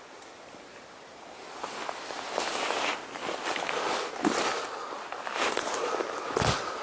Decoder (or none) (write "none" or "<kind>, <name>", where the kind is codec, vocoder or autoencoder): none